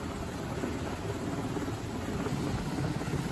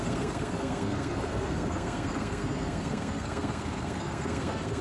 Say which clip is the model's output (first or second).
second